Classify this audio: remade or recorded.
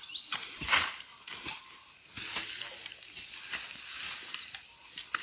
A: recorded